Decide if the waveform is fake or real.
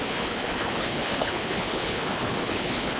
fake